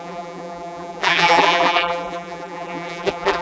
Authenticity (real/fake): fake